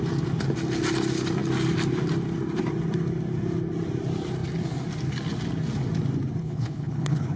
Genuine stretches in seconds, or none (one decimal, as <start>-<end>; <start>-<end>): 0.0-6.4